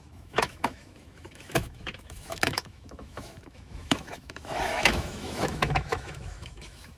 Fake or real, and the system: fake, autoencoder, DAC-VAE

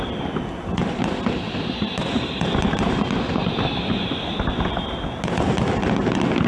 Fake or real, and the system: real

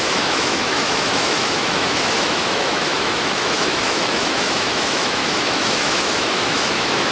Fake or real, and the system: fake, autoencoder, DAC-VAE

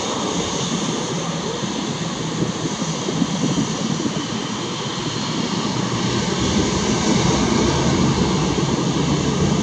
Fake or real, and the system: real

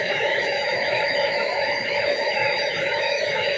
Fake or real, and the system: fake, autoencoder, DAC-VAE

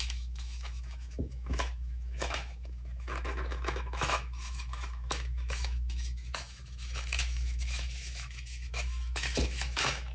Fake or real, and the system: fake, autoencoder, DAC-VAE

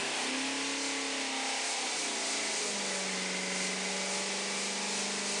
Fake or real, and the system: real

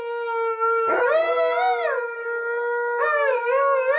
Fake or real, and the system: real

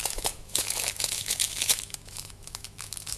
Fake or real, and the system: fake, autoencoder, DAC-VAE